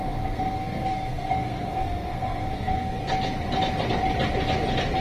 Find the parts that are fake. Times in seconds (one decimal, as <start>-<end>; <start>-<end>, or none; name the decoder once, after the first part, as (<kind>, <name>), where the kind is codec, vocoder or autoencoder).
0.0-3.0 (codec, SNAC)